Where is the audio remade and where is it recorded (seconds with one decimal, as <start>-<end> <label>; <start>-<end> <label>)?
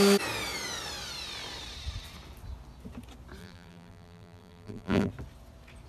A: 0.0-3.4 recorded; 3.4-5.1 remade; 5.1-5.9 recorded